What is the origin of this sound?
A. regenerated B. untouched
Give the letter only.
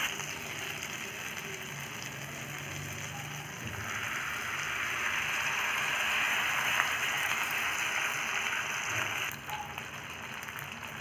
B